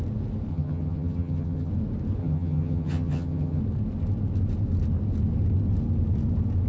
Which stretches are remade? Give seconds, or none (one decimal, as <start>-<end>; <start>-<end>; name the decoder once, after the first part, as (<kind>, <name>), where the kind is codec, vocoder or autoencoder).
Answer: 0.5-1.7 (vocoder, HiFi-GAN); 2.2-3.6